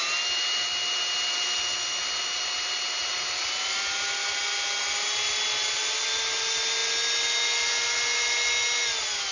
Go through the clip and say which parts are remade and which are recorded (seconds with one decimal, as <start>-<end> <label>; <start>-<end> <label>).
0.0-9.3 recorded